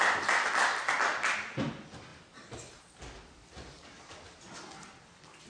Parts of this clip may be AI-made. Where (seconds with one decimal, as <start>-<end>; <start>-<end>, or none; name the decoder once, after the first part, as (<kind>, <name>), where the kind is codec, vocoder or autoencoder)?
none